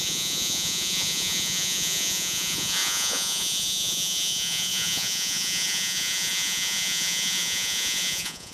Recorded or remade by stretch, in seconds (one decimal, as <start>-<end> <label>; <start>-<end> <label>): 0.0-8.5 remade